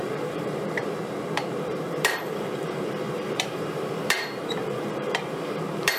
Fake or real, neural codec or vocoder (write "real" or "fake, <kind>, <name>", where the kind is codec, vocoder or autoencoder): fake, vocoder, BigVGAN v2